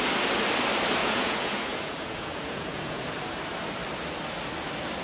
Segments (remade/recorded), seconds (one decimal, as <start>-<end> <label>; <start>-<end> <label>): 0.0-1.0 recorded; 1.0-3.0 remade; 3.0-5.0 recorded